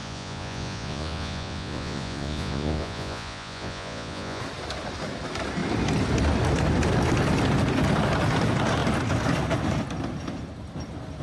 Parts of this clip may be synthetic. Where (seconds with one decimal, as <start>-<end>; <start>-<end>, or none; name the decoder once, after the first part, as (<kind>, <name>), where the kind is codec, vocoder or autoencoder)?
0.0-4.4 (vocoder, Vocos)